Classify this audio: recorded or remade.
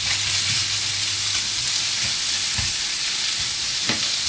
recorded